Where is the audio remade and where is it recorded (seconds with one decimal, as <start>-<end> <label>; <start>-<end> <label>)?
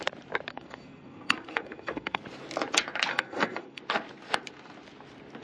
0.0-0.5 recorded; 0.5-2.2 remade; 2.2-3.1 recorded; 3.1-3.8 remade; 3.8-5.4 recorded